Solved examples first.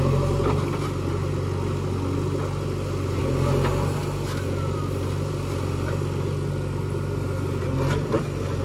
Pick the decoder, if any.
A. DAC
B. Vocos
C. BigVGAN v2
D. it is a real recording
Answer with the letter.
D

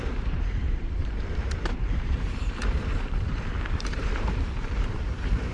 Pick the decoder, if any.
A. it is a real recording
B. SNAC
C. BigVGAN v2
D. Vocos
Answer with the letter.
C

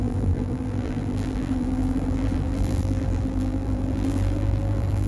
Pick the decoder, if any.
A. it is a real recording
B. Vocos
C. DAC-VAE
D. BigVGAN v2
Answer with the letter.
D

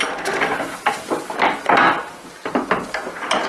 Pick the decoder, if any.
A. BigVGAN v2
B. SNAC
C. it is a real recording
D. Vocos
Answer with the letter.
C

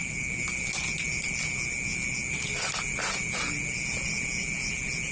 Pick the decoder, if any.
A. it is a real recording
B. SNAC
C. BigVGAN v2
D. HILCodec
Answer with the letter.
A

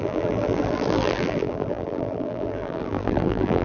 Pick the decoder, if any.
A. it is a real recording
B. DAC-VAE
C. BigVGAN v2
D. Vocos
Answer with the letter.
C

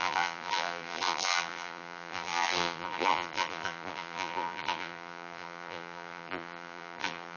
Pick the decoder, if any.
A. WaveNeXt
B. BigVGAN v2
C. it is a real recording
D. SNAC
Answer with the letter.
B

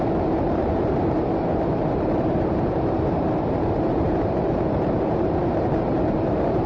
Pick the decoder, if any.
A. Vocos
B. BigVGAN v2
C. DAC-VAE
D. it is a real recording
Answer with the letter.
B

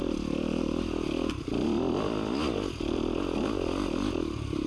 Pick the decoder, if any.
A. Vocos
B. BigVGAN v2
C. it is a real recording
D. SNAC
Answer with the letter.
B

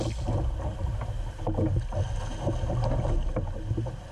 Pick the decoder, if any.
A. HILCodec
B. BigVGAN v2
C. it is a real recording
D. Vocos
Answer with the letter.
C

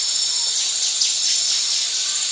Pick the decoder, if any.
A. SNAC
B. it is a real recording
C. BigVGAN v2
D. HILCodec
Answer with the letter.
B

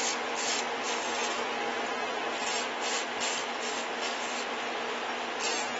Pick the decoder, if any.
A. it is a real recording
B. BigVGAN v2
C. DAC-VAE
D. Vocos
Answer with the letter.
A